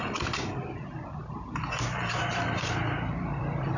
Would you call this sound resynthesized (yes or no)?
yes